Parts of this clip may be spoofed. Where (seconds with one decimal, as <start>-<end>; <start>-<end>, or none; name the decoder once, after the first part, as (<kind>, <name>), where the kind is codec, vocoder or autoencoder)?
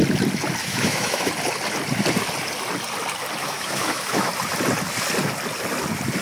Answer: 0.6-1.3 (autoencoder, DAC-VAE); 3.4-4.3